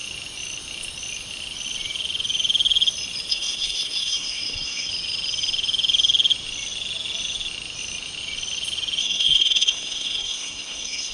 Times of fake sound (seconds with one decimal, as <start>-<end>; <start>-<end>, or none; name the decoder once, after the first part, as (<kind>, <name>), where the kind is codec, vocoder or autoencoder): 3.3-4.9 (codec, SNAC); 9.0-11.1